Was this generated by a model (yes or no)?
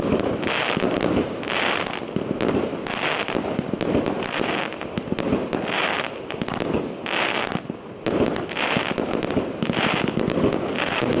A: no